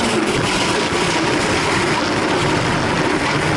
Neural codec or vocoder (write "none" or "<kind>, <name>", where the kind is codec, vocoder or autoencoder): none